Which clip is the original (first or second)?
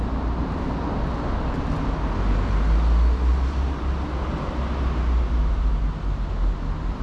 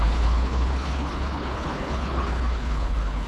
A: first